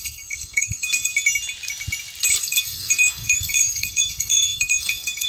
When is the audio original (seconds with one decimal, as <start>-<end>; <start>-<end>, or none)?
1.1-2.4